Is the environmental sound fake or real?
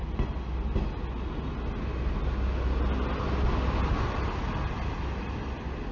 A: real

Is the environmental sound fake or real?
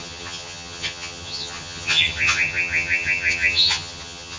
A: fake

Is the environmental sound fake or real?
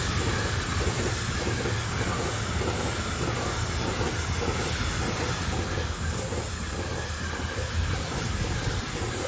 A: real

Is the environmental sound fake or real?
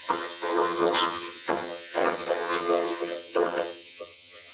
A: fake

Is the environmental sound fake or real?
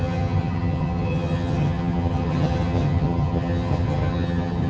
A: fake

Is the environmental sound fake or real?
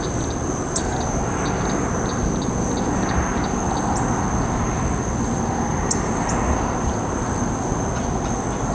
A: real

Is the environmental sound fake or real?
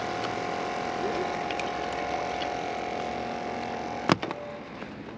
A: real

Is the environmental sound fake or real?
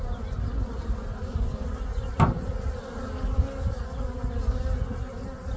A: real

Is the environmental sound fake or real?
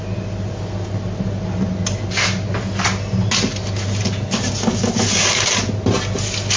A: real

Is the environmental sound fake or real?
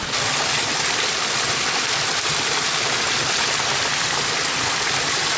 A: real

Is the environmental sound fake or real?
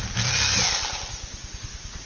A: real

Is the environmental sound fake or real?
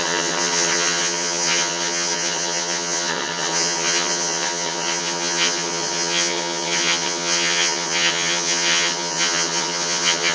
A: fake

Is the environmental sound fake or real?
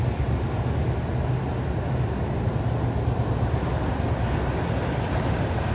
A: real